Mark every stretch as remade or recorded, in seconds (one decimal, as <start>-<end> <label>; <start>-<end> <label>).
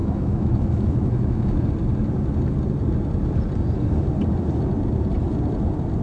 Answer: 0.0-1.7 remade; 1.7-6.0 recorded